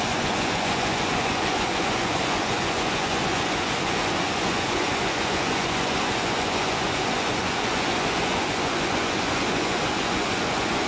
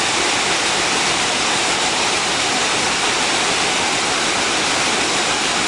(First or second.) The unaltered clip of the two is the second